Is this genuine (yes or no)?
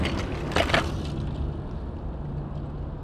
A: yes